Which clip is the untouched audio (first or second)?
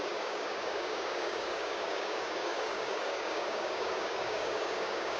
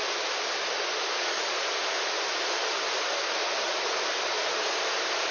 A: second